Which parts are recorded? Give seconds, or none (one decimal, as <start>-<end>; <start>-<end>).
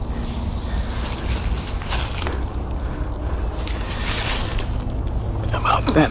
0.0-6.1